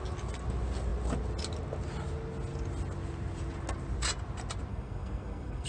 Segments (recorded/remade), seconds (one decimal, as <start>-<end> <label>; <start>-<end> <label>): 0.0-4.7 recorded; 4.7-5.7 remade